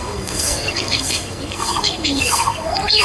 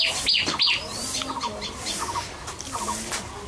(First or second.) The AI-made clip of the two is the first